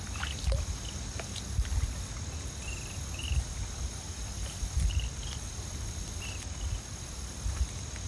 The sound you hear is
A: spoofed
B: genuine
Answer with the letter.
B